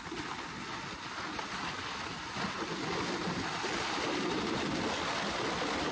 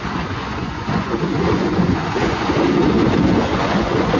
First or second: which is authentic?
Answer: first